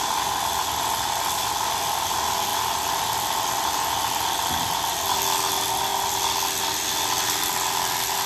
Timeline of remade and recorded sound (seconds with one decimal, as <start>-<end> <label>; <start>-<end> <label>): 0.0-8.3 recorded